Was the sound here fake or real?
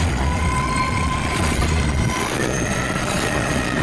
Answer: fake